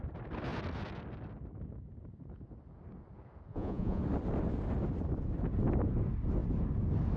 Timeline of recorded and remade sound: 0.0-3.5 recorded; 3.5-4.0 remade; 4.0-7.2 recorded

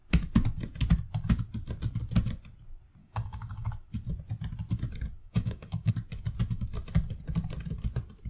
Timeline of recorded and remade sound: 0.0-3.0 recorded; 3.0-3.7 remade; 3.7-5.2 recorded; 5.2-5.9 remade; 5.9-8.3 recorded

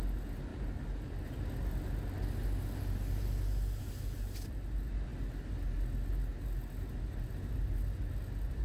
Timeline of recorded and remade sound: 0.0-8.6 recorded